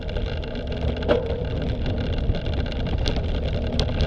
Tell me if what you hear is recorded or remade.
recorded